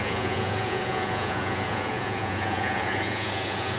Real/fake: fake